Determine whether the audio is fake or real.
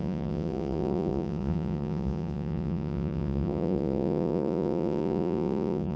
fake